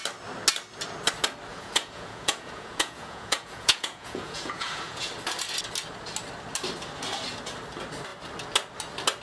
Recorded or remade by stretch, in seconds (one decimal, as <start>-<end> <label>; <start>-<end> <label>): 0.0-1.5 recorded; 1.5-5.1 remade; 5.1-9.2 recorded